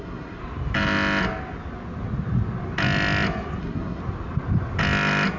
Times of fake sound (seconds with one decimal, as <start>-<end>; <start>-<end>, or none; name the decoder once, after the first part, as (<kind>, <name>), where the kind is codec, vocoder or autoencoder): 0.0-0.4 (codec, SNAC); 3.6-4.0

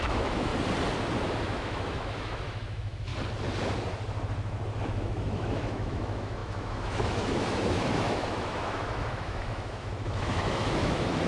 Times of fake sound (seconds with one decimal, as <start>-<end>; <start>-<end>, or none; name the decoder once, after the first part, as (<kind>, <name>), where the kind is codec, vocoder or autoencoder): 0.0-0.5 (autoencoder, DAC-VAE); 1.2-3.1; 4.8-11.3

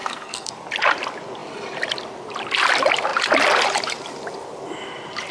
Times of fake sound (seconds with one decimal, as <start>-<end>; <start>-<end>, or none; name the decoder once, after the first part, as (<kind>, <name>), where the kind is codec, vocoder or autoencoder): 0.0-0.5 (codec, SNAC)